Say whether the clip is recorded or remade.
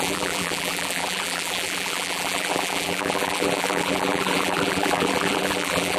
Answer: remade